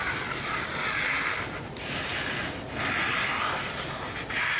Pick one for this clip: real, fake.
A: real